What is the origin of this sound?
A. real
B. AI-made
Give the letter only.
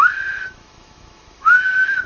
B